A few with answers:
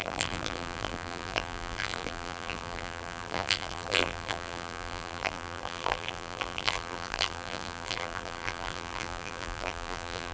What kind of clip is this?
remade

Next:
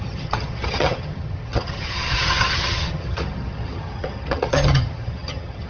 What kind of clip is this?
remade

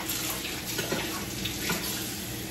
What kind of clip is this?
recorded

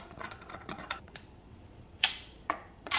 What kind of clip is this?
remade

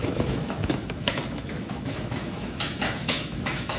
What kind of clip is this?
remade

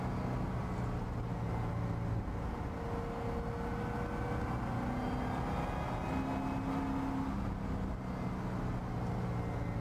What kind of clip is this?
recorded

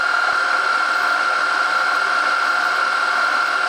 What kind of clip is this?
recorded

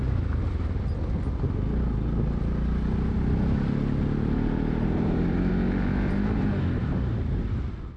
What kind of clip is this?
recorded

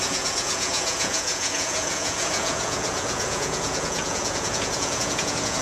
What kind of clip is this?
remade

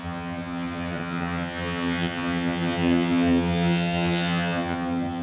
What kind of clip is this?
remade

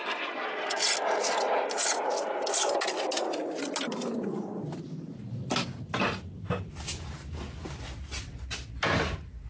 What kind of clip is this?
recorded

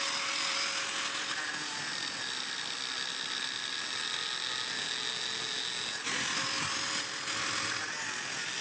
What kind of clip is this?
recorded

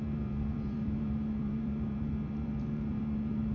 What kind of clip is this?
remade